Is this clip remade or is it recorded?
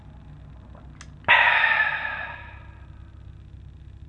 recorded